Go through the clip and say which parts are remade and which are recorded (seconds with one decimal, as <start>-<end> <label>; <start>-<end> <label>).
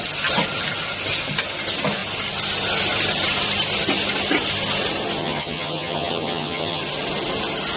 0.0-5.2 recorded; 5.2-6.8 remade; 6.8-7.8 recorded